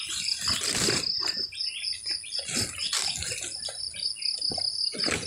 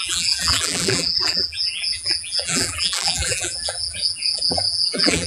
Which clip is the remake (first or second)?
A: second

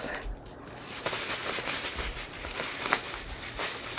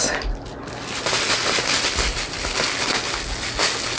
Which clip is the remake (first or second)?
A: first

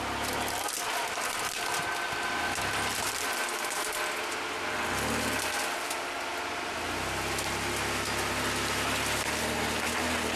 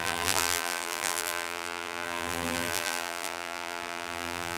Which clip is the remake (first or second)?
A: second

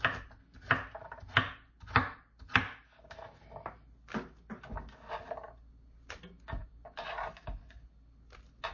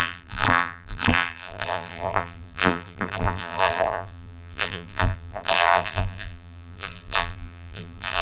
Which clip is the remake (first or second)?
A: second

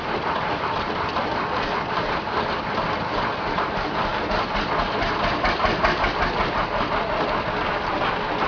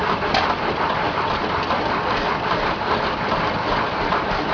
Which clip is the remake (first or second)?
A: second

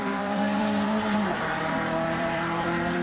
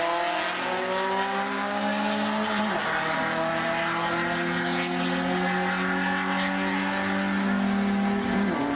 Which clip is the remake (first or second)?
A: first